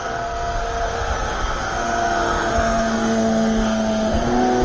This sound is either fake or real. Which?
fake